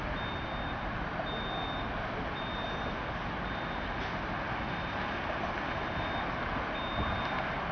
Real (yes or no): yes